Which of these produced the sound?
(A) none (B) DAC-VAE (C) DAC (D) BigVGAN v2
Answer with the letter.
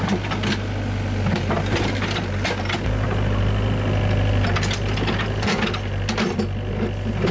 A